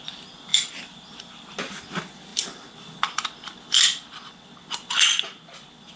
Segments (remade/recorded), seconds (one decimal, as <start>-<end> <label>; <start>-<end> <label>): 0.0-0.5 recorded; 0.5-1.2 remade; 1.2-2.3 recorded; 2.3-5.0 remade; 5.0-6.0 recorded

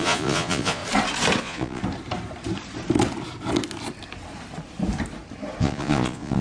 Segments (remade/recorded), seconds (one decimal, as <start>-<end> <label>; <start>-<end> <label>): 0.0-0.8 remade; 0.8-1.4 recorded; 1.4-1.8 remade; 1.8-5.6 recorded; 5.6-6.4 remade

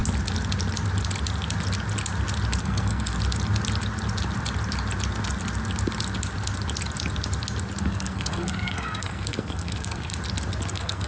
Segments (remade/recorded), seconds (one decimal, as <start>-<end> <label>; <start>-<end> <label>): 0.0-2.6 recorded; 2.6-3.1 remade; 3.1-7.8 recorded; 7.8-10.1 remade; 10.1-10.7 recorded; 10.7-11.1 remade

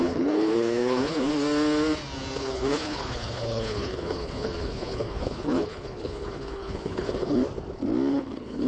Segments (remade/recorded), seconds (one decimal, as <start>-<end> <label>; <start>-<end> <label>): 0.0-1.3 remade; 1.3-2.4 recorded; 2.4-7.4 remade; 7.4-8.1 recorded; 8.1-8.7 remade

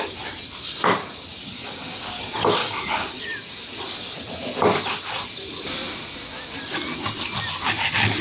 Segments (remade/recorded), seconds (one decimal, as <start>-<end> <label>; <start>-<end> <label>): 0.0-1.4 recorded; 1.4-2.2 remade; 2.2-2.6 recorded; 2.6-3.2 remade; 3.2-8.2 recorded

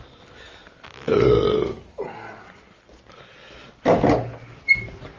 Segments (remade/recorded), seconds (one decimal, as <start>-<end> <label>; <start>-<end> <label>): 0.0-5.2 recorded